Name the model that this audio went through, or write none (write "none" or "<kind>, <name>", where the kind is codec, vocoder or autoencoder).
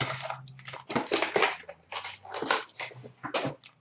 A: none